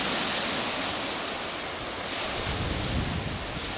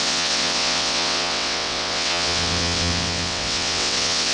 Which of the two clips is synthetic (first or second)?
second